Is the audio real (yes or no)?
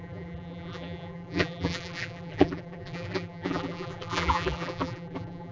no